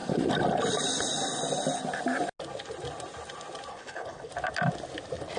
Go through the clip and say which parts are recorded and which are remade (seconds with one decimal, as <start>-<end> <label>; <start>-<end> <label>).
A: 0.0-3.7 recorded; 3.7-4.3 remade; 4.3-5.4 recorded